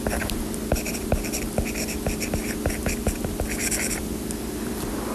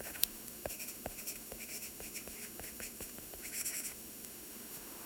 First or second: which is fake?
second